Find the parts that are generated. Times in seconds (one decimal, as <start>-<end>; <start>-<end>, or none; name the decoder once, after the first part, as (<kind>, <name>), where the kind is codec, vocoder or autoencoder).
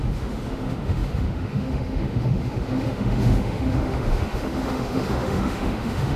0.0-6.2 (autoencoder, DAC-VAE)